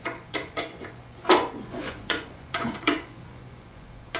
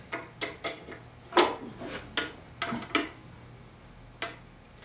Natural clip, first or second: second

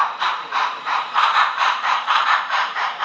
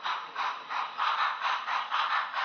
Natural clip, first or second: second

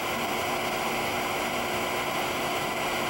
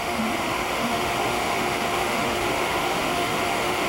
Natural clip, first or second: first